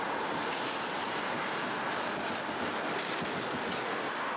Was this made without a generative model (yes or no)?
yes